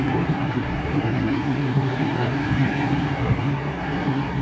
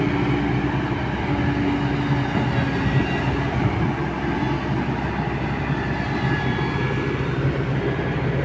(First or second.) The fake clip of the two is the first